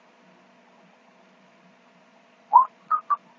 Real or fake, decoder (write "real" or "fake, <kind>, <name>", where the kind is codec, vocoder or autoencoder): fake, vocoder, Vocos